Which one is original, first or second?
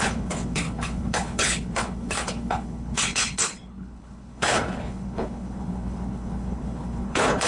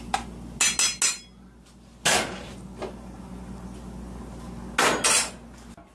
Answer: second